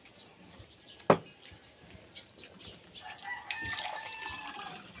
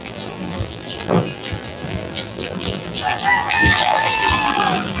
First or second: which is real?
first